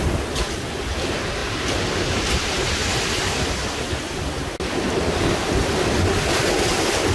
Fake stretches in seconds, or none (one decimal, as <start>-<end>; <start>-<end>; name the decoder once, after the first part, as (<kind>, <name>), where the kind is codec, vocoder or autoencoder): 1.4-2.2 (vocoder, BigVGAN v2)